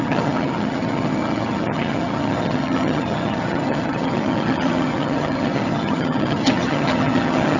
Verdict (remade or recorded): remade